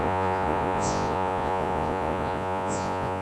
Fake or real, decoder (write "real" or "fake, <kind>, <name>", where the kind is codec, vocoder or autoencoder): fake, vocoder, Vocos